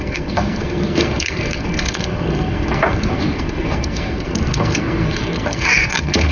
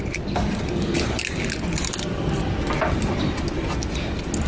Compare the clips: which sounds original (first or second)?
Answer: second